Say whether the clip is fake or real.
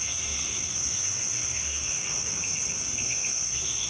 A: fake